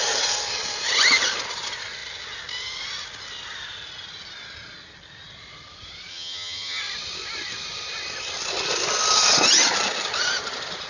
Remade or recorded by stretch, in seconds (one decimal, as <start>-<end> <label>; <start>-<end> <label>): 0.0-6.1 recorded; 6.1-6.8 remade; 6.8-10.9 recorded